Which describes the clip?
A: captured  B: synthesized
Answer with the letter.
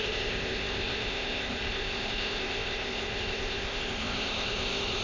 B